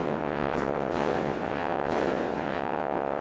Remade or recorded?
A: remade